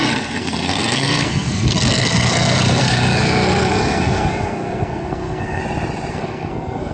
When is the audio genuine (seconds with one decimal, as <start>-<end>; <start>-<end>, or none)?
5.6-6.1